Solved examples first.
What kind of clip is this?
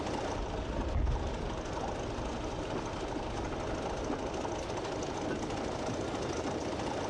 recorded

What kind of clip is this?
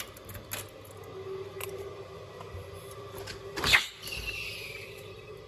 recorded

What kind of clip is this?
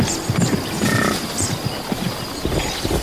recorded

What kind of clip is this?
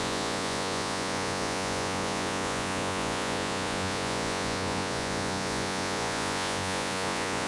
remade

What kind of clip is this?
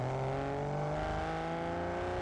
recorded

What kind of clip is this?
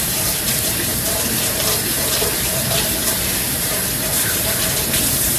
remade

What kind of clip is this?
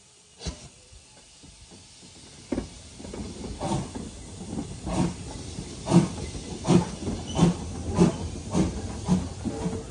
recorded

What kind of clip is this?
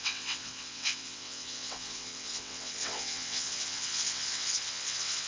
remade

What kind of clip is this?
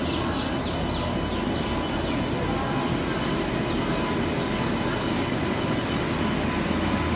recorded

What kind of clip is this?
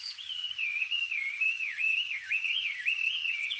remade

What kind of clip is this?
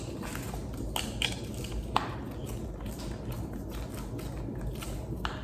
recorded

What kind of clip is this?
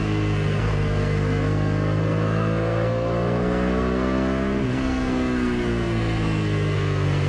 remade